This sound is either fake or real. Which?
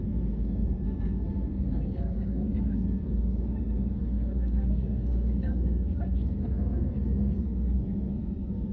fake